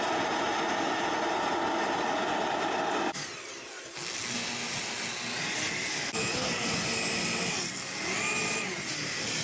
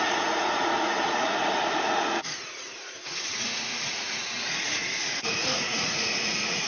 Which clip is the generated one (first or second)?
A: second